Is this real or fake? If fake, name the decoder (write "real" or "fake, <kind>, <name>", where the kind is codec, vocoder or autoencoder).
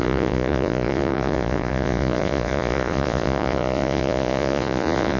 fake, vocoder, Vocos